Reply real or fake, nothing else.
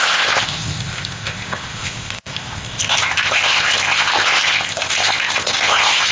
fake